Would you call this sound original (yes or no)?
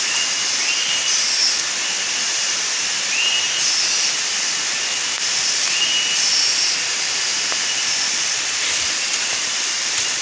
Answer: no